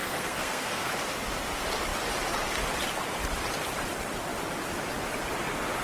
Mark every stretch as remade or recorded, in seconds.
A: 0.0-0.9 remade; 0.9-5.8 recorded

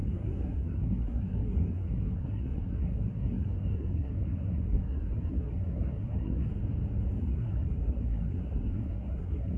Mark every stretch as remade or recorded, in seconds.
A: 0.0-6.5 remade; 6.5-7.2 recorded; 7.2-9.6 remade

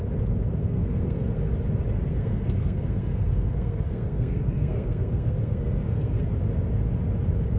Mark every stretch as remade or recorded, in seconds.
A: 0.0-0.6 recorded; 0.6-1.4 remade; 1.4-2.1 recorded; 2.1-6.3 remade; 6.3-7.6 recorded

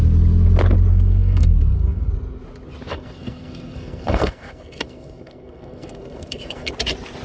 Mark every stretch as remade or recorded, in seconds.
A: 0.0-0.9 recorded; 0.9-2.1 remade; 2.1-2.9 recorded; 2.9-6.7 remade; 6.7-7.2 recorded